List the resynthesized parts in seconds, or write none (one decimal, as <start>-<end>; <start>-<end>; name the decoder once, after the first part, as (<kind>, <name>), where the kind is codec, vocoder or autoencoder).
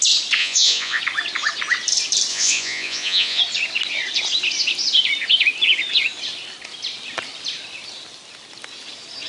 0.4-1.0 (vocoder, Vocos); 2.3-3.4